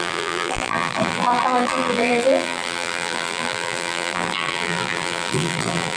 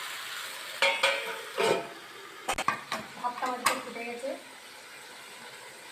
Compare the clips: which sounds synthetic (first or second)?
first